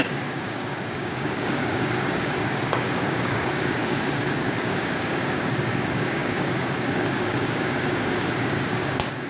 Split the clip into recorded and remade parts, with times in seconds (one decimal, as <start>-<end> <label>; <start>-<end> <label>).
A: 0.0-9.3 remade